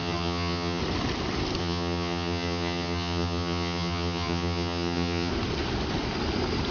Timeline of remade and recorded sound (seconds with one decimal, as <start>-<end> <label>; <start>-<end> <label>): 0.0-0.8 remade; 0.8-1.6 recorded; 1.6-5.3 remade; 5.3-6.7 recorded